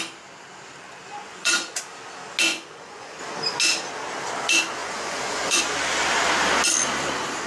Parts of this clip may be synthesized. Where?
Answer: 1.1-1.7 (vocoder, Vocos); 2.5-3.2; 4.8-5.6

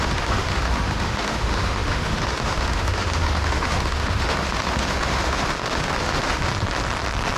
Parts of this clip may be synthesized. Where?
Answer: 0.0-6.5 (autoencoder, DAC-VAE)

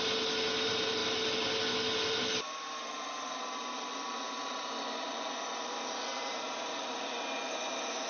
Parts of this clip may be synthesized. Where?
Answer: none

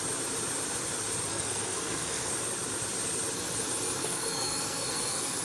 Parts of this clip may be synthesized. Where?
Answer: 1.3-2.3 (codec, SNAC); 4.0-5.4

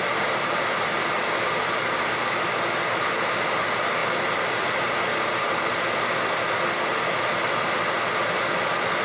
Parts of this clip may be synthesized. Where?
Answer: 4.0-5.6 (vocoder, BigVGAN v2)

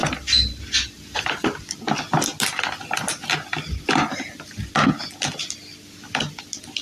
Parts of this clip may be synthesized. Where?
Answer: none

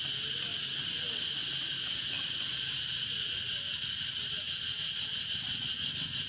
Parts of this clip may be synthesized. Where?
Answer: none

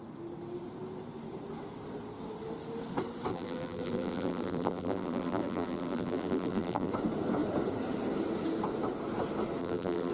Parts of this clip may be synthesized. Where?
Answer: 3.3-6.9 (vocoder, BigVGAN v2); 9.6-10.1